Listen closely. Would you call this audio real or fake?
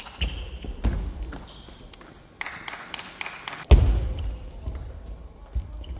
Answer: real